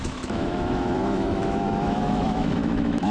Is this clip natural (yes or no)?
no